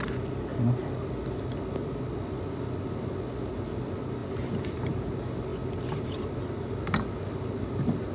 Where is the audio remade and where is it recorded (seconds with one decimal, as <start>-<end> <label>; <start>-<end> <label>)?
0.0-8.1 recorded

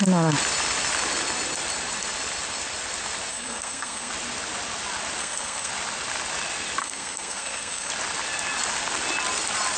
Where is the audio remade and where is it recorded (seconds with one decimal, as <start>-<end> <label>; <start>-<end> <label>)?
0.0-3.3 recorded; 3.3-4.1 remade; 4.1-5.2 recorded; 5.2-5.7 remade; 5.7-6.8 recorded; 6.8-7.9 remade; 7.9-9.8 recorded